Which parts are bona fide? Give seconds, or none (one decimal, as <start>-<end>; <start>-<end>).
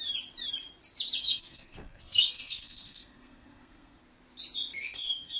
0.0-1.2; 4.0-4.7